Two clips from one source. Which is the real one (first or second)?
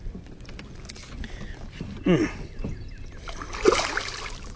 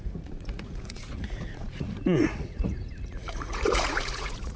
first